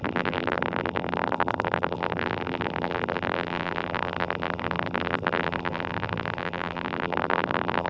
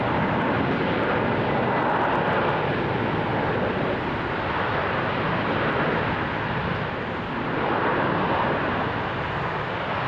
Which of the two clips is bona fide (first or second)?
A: second